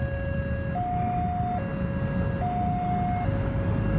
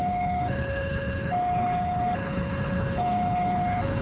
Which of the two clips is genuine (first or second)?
first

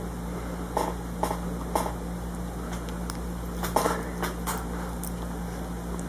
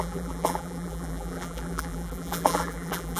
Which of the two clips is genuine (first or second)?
first